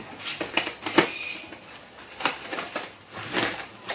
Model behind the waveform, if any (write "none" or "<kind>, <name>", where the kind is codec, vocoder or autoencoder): none